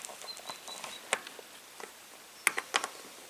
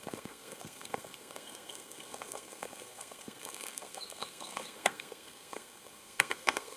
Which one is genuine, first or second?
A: first